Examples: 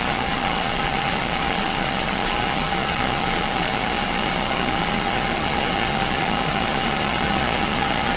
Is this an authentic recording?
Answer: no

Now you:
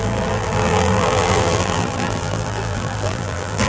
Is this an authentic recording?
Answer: no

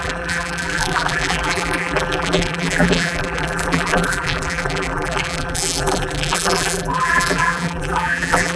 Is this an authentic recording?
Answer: no